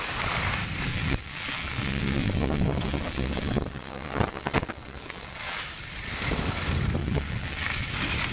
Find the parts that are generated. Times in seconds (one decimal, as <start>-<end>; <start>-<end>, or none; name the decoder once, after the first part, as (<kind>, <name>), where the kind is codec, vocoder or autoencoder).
0.9-5.6 (vocoder, WaveNeXt); 7.0-7.9